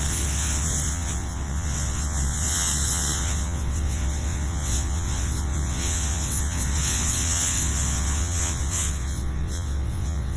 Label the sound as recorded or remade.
remade